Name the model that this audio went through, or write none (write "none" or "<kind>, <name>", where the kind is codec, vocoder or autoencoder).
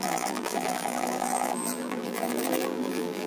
vocoder, BigVGAN v2